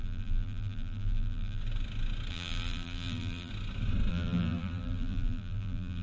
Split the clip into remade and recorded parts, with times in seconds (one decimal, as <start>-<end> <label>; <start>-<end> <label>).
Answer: 0.0-1.6 remade; 1.6-2.3 recorded; 2.3-3.5 remade; 3.5-4.1 recorded; 4.1-6.0 remade